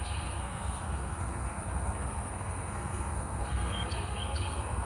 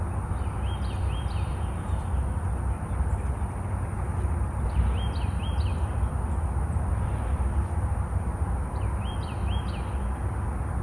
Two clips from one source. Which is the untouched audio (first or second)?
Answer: second